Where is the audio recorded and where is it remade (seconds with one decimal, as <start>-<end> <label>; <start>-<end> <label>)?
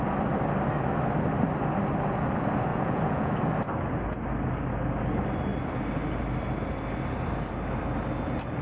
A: 0.0-2.7 recorded; 2.7-3.3 remade; 3.3-8.6 recorded